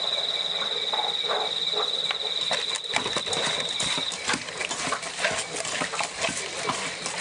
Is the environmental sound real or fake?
real